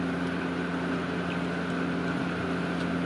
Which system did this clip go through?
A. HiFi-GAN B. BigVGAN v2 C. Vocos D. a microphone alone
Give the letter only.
D